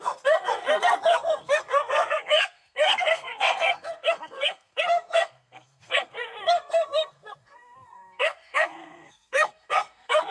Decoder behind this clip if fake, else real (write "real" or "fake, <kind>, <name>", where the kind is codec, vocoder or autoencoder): fake, codec, SNAC